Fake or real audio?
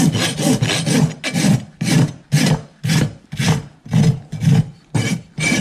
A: real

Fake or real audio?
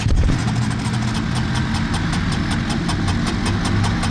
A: real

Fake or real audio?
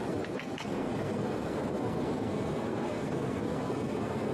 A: fake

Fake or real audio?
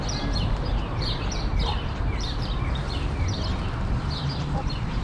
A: fake